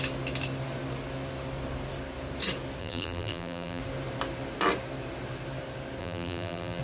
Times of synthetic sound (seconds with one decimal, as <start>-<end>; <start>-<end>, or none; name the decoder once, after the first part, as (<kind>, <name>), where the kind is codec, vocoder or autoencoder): 2.8-3.8 (vocoder, BigVGAN v2); 6.0-6.8